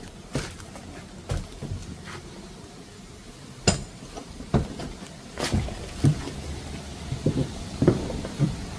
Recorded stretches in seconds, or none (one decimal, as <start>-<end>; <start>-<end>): 0.0-1.8; 2.7-4.2; 7.9-8.8